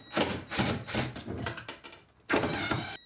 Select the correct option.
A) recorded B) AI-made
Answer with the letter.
A